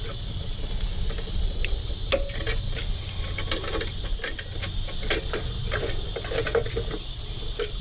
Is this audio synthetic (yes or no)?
no